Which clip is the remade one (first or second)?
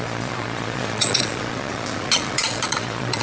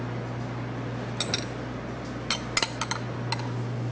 first